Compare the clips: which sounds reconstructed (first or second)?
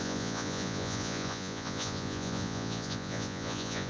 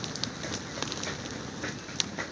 first